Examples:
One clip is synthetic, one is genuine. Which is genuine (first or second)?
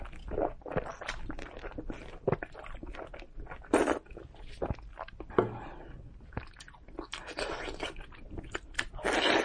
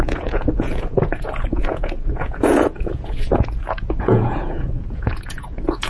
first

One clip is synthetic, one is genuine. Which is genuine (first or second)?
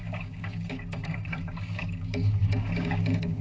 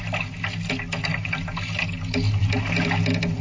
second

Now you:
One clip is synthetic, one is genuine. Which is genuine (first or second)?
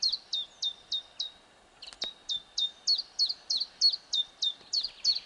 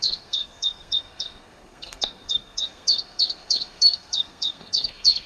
first